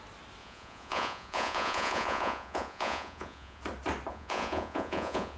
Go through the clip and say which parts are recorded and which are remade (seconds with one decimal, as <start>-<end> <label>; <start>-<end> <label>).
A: 0.0-0.4 recorded; 0.4-3.6 remade; 3.6-4.1 recorded; 4.1-5.4 remade